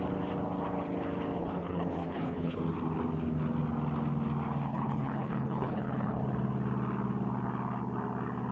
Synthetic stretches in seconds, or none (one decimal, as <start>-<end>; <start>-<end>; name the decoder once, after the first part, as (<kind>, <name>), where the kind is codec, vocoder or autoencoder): 1.4-2.6 (codec, HILCodec); 4.7-6.2